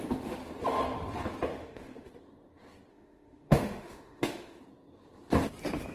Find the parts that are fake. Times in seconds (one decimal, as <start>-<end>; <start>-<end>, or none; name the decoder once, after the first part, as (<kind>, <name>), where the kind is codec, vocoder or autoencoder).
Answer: 1.5-2.1 (autoencoder, DAC-VAE); 2.9-4.6